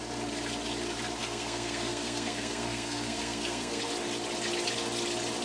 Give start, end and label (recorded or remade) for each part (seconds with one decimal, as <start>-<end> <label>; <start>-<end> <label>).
0.0-1.2 recorded; 1.2-3.8 remade; 3.8-5.4 recorded